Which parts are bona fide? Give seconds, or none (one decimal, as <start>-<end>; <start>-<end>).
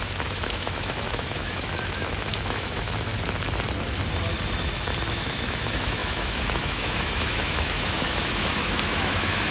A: 3.1-5.1